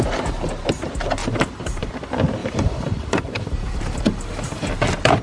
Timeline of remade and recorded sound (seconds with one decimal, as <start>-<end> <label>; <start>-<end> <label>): 0.0-1.2 recorded; 1.2-1.9 remade; 1.9-2.4 recorded; 2.4-4.7 remade; 4.7-5.2 recorded